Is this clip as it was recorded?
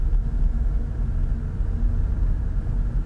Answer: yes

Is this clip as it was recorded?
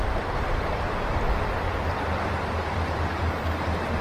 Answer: yes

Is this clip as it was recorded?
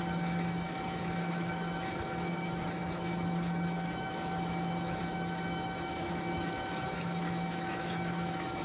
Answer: no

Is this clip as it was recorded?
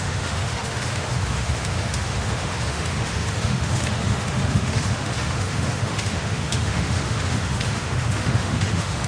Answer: no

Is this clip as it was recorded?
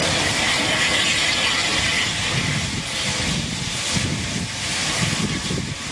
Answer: yes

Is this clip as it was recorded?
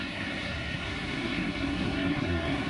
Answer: no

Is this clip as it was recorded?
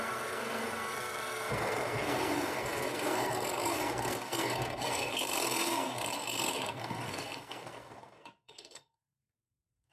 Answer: no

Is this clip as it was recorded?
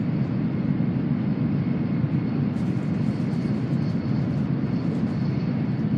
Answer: yes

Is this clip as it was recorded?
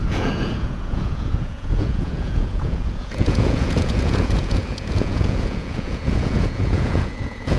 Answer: no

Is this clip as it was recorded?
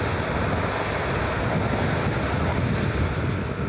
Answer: yes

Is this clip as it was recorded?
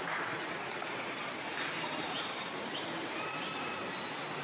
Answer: yes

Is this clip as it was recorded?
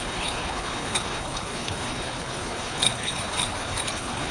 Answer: no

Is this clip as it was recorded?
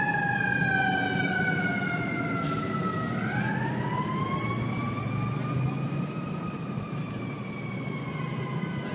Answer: yes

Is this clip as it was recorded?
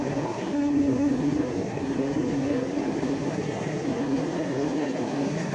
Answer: no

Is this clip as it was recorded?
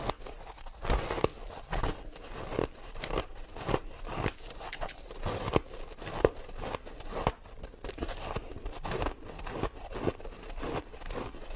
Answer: yes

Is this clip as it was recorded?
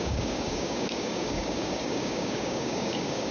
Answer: no